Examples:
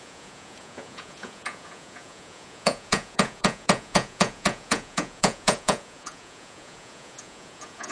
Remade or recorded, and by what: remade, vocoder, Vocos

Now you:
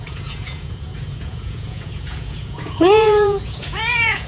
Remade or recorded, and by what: remade, vocoder, Vocos